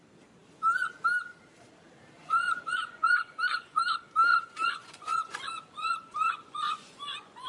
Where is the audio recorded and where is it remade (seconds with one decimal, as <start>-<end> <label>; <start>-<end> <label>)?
0.0-2.2 recorded; 2.2-3.8 remade; 3.8-4.3 recorded; 4.3-7.5 remade